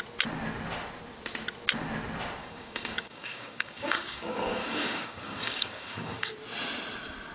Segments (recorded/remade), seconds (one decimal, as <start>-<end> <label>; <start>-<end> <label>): 0.0-2.4 recorded; 2.4-6.3 remade; 6.3-7.3 recorded